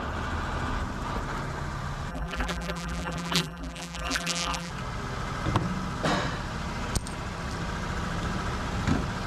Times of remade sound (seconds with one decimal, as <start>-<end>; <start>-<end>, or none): 2.1-4.7